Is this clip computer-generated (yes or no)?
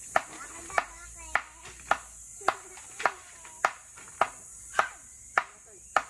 no